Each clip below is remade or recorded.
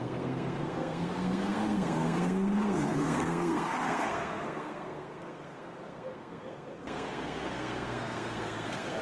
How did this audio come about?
remade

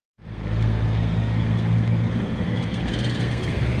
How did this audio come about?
remade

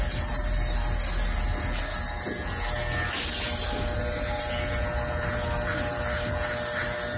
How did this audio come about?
recorded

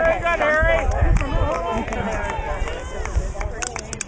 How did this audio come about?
recorded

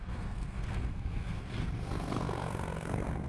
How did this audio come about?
remade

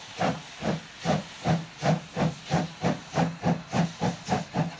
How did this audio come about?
recorded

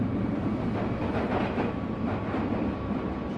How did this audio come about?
recorded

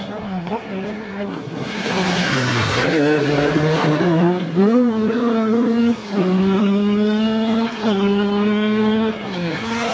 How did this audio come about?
remade